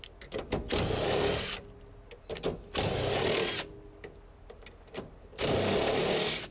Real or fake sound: real